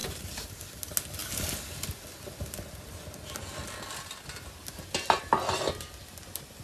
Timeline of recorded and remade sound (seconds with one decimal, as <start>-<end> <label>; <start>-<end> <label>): 0.0-0.6 remade; 0.6-6.6 recorded